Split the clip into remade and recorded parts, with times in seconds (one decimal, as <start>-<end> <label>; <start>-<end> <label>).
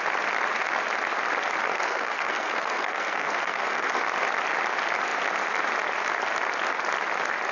0.0-1.7 recorded; 1.7-4.0 remade; 4.0-7.5 recorded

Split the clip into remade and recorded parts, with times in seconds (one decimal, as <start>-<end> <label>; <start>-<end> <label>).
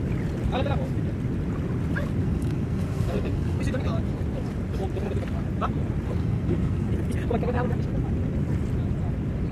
0.0-2.2 recorded; 2.2-3.6 remade; 3.6-6.2 recorded; 6.2-6.9 remade; 6.9-9.5 recorded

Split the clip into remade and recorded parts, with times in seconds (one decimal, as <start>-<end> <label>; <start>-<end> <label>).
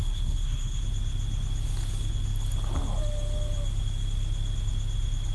0.0-0.8 remade; 0.8-5.3 recorded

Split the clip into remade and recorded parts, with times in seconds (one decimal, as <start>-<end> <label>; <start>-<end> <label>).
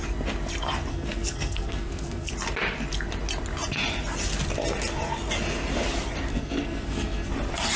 0.0-0.9 recorded; 0.9-2.3 remade; 2.3-6.3 recorded; 6.3-7.3 remade; 7.3-7.8 recorded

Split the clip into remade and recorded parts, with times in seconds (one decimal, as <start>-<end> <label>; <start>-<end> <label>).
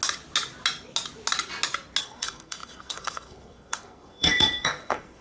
0.0-2.0 recorded; 2.0-5.2 remade